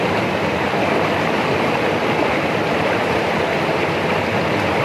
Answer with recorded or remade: recorded